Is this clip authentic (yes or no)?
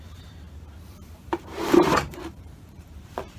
no